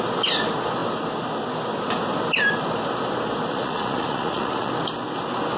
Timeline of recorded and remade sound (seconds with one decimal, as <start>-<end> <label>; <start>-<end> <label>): 0.0-3.5 recorded; 3.5-4.7 remade; 4.7-5.6 recorded